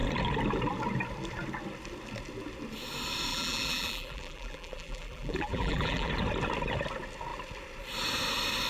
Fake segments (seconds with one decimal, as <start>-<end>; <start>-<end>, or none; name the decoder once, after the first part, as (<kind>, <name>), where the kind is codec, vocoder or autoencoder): 3.3-6.1 (vocoder, BigVGAN v2)